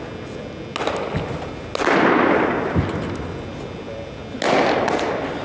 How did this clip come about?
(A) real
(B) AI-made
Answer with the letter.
A